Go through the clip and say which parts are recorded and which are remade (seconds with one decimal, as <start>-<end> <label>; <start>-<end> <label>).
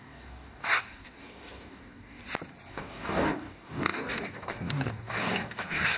0.0-2.2 remade; 2.2-2.7 recorded; 2.7-6.0 remade